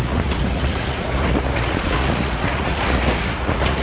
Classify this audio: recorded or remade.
remade